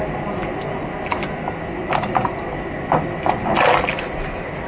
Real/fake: real